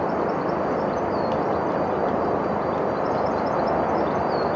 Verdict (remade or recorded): recorded